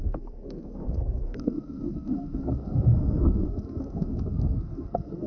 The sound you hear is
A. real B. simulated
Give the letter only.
B